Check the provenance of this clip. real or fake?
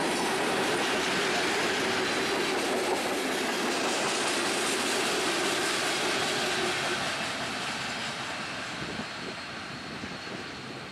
real